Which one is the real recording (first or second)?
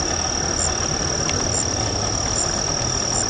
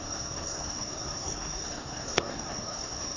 first